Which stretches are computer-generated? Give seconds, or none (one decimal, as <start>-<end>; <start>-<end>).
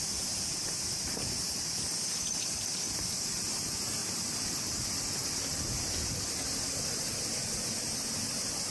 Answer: none